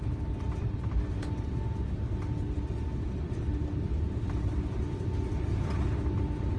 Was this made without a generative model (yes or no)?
yes